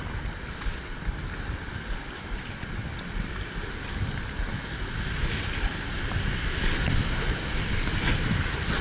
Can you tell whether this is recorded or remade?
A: recorded